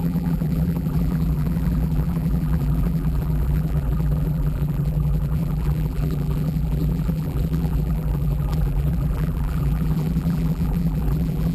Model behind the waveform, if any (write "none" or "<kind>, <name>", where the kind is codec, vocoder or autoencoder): vocoder, BigVGAN v2